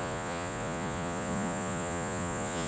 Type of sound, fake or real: fake